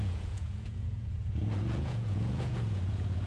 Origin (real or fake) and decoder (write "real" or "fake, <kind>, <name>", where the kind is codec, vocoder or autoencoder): fake, vocoder, Vocos